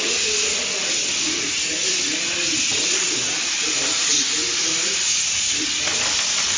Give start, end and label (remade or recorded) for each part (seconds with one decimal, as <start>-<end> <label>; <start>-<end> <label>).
0.0-6.6 recorded